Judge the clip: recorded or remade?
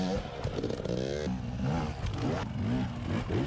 recorded